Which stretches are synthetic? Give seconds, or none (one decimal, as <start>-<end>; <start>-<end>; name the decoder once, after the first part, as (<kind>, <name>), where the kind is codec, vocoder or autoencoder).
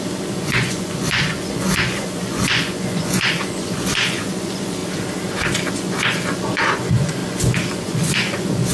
0.0-4.8 (vocoder, Vocos); 5.7-8.7